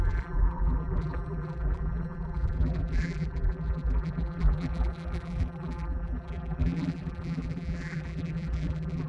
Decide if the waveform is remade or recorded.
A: remade